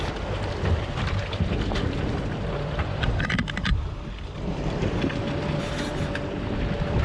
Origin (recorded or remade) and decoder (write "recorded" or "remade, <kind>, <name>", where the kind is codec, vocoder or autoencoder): remade, vocoder, BigVGAN v2